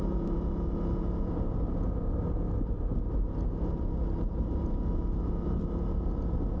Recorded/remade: recorded